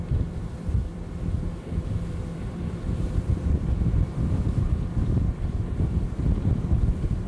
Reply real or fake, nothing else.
fake